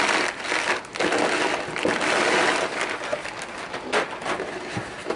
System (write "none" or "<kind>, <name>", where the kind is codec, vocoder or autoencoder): none